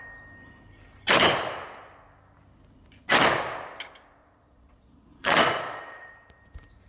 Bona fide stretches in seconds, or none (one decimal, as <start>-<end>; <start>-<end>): 0.0-4.2; 6.1-6.9